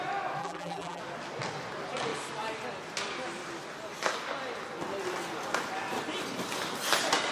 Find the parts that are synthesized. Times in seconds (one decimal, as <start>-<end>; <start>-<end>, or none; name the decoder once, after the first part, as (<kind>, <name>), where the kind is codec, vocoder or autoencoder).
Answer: 0.4-1.0 (vocoder, BigVGAN v2)

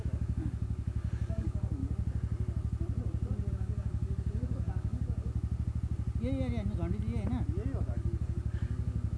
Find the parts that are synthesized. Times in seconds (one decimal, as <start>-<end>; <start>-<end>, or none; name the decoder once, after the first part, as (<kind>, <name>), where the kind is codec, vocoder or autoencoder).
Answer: 0.0-1.8 (codec, DAC); 3.5-5.3; 7.8-9.2

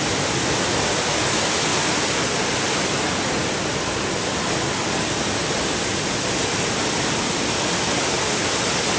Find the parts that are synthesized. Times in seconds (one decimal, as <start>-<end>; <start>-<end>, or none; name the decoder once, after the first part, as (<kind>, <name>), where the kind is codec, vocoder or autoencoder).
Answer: none

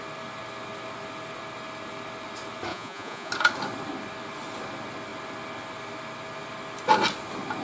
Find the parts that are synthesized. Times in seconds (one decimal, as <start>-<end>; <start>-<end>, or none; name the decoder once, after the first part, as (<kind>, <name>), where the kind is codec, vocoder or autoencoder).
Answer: 2.7-3.3 (vocoder, Vocos)

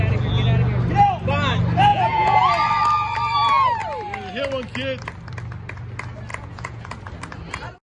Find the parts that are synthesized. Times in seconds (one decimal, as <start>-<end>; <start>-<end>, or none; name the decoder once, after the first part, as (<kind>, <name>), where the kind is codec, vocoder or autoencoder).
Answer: 1.9-2.5 (vocoder, Vocos); 6.3-6.9

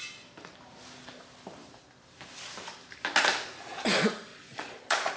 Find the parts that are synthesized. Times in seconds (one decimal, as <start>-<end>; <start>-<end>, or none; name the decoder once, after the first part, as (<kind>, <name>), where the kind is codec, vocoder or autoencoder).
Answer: 4.3-5.2 (vocoder, Vocos)

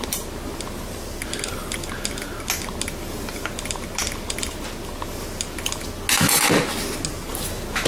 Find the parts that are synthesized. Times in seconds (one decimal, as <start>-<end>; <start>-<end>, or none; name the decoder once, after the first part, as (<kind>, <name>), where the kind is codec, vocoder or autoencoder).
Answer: none